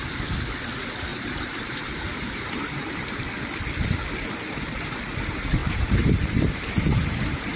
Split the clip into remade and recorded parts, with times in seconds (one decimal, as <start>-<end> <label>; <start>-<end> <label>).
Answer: 0.0-1.1 recorded; 1.1-3.2 remade; 3.2-5.6 recorded; 5.6-7.6 remade

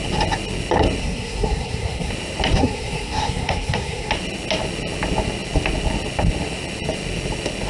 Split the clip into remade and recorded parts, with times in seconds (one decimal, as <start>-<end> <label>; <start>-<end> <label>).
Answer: 0.0-1.0 recorded; 1.0-2.1 remade; 2.1-2.6 recorded; 2.6-4.1 remade; 4.1-7.7 recorded

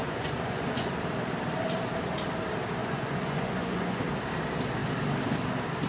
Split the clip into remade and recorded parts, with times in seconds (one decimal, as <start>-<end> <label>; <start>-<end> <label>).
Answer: 0.0-0.9 remade; 0.9-2.8 recorded; 2.8-4.0 remade; 4.0-5.9 recorded